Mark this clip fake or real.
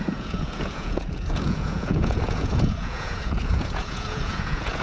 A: fake